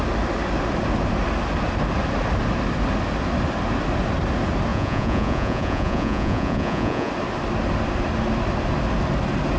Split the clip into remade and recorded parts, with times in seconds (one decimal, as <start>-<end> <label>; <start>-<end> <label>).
0.0-4.7 recorded; 4.7-7.1 remade; 7.1-9.6 recorded